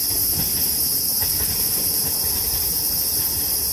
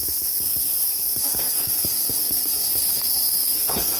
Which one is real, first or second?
first